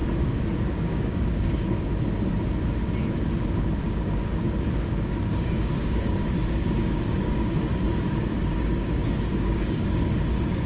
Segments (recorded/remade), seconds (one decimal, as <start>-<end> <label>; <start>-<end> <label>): 0.0-1.9 remade; 1.9-3.6 recorded; 3.6-10.7 remade